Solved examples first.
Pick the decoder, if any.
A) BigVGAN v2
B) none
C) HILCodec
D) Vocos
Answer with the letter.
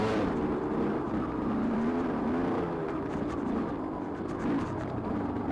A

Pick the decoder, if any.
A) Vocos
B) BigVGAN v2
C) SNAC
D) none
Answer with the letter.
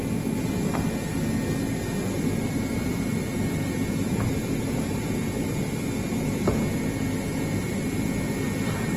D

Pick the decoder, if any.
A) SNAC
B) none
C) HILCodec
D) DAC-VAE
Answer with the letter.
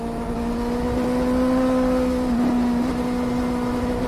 B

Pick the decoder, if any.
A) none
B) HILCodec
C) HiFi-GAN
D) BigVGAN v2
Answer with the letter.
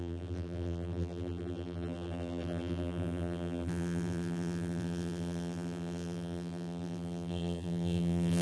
D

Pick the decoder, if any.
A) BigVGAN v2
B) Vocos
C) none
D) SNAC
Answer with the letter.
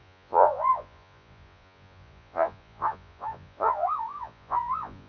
B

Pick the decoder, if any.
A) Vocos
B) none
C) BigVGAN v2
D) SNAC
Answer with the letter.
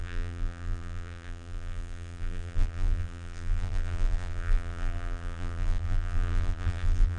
C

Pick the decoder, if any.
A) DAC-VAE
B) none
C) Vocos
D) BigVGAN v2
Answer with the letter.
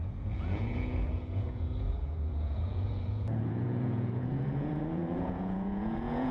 C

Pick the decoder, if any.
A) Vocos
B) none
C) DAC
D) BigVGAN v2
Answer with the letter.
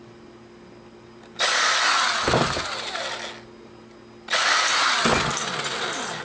B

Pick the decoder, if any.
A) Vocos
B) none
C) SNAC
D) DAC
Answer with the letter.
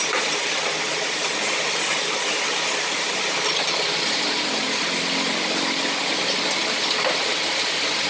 B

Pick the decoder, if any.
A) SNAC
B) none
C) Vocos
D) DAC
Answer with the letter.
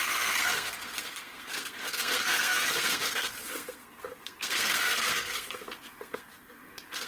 A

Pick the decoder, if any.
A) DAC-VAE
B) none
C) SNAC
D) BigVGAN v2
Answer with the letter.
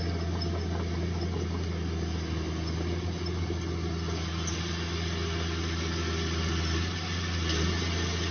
B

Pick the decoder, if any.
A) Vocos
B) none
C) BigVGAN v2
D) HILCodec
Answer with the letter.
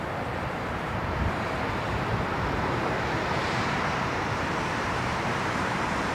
C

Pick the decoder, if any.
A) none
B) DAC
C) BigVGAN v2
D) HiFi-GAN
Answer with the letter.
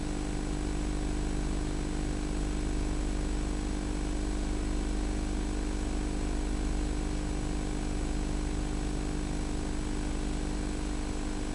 A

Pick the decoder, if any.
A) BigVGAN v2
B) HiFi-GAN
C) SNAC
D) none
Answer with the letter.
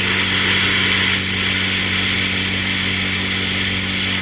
D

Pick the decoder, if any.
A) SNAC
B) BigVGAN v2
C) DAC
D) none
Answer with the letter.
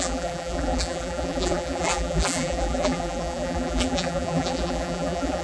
B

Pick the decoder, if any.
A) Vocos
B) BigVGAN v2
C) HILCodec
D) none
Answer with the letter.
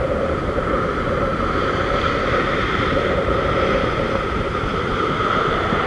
B